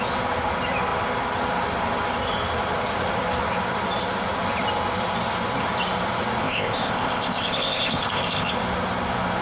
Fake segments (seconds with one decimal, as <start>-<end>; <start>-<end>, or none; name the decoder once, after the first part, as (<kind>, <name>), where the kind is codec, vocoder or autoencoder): 6.4-8.5 (codec, ZipCodec)